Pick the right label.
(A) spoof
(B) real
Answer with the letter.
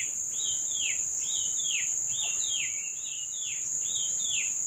B